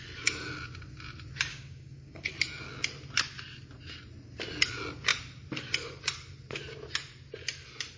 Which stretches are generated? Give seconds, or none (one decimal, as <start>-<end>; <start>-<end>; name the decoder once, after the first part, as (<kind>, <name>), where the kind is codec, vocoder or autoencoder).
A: 1.5-2.3 (codec, DAC)